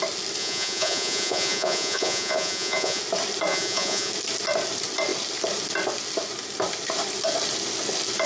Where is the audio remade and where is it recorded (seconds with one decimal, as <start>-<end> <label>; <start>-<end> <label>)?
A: 0.0-0.4 recorded; 0.4-3.0 remade; 3.0-3.5 recorded; 3.5-4.1 remade; 4.1-8.3 recorded

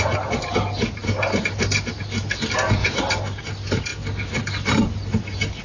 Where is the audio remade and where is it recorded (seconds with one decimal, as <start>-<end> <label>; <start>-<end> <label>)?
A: 0.0-5.6 recorded

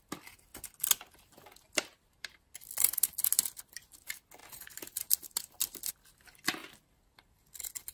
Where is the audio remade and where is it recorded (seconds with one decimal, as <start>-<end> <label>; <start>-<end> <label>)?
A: 0.0-7.9 recorded

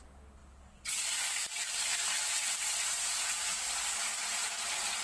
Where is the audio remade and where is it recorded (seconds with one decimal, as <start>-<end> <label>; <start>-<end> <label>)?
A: 0.0-3.1 recorded; 3.1-3.6 remade; 3.6-5.0 recorded

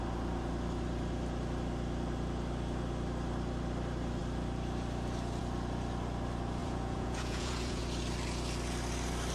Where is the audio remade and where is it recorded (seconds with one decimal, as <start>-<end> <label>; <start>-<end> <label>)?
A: 0.0-6.6 recorded; 6.6-7.8 remade; 7.8-9.3 recorded